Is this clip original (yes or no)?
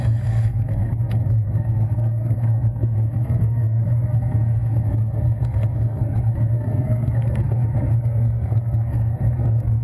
no